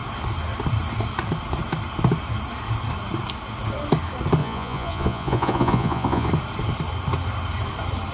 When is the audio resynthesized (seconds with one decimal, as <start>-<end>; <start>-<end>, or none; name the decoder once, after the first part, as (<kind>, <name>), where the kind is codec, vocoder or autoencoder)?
4.4-6.3 (vocoder, Vocos)